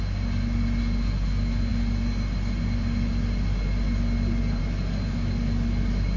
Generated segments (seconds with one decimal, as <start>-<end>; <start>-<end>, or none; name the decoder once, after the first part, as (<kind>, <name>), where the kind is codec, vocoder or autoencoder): none

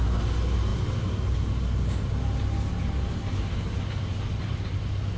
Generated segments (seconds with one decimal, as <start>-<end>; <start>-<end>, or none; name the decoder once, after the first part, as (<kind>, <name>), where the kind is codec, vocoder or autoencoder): none